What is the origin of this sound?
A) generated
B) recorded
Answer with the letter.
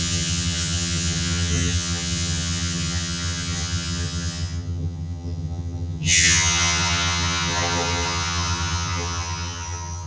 A